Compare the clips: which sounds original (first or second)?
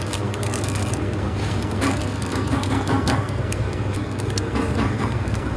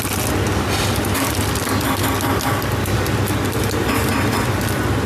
second